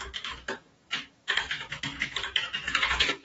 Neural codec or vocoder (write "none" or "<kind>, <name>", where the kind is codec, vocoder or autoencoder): autoencoder, DAC-VAE